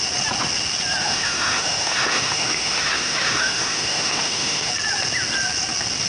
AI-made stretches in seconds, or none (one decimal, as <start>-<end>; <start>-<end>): 1.0-4.7